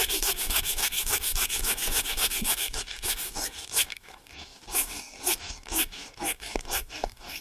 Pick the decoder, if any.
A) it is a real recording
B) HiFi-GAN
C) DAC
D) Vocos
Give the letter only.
C